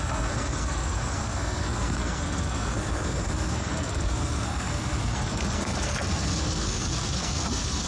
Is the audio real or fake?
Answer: fake